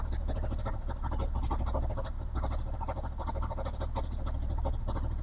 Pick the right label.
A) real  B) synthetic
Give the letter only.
A